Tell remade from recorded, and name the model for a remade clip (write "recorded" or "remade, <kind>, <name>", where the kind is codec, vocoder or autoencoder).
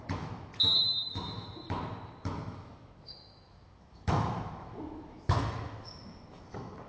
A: remade, autoencoder, DAC-VAE